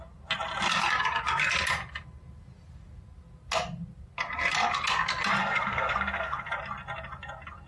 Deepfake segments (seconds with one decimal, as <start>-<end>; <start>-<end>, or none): 5.4-6.5